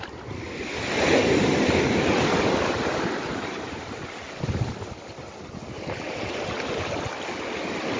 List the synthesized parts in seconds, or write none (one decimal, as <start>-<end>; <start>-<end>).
none